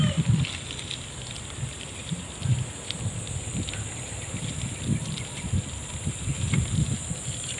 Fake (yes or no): no